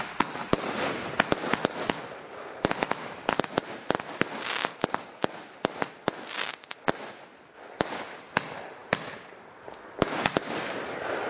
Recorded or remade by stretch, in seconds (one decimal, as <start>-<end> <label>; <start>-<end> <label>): 0.0-0.5 recorded; 0.5-1.3 remade; 1.3-11.3 recorded